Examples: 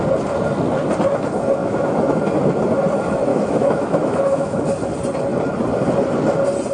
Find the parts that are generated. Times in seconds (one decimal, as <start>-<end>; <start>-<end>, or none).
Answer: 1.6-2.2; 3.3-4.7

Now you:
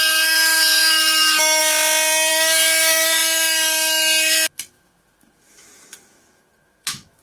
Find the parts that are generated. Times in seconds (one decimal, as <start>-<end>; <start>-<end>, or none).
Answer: 0.0-1.6; 2.3-7.2

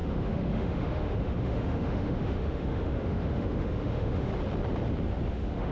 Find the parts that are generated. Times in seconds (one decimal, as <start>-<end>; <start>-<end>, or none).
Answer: 0.0-4.3; 5.3-5.7

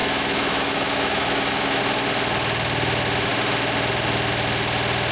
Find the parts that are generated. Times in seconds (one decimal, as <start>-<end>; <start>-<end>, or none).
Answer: 0.0-1.8

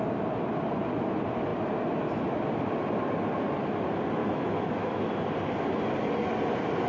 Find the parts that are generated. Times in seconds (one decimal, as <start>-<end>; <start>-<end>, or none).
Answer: 4.2-5.1

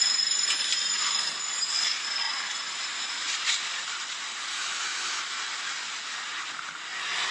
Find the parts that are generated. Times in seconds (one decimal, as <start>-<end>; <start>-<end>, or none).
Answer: 4.5-5.2

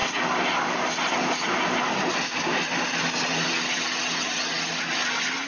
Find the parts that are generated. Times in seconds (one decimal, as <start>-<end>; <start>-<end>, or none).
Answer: none

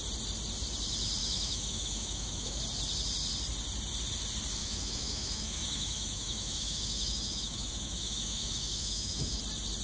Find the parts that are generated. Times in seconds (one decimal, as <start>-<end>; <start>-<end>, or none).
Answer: 1.2-2.6; 4.6-9.4